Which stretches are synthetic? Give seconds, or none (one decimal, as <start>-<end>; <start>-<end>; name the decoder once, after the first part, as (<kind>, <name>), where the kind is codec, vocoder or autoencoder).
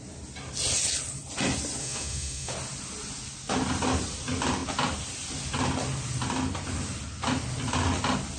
1.8-2.5 (autoencoder, DAC-VAE)